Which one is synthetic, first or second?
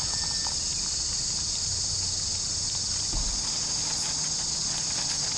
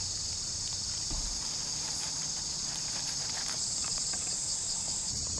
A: second